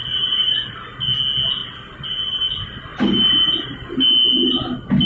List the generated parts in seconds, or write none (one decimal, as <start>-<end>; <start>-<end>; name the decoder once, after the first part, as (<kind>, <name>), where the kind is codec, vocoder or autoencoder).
0.0-0.7 (vocoder, Vocos)